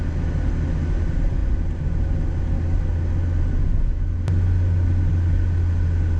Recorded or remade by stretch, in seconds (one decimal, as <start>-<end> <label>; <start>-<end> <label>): 0.0-6.2 recorded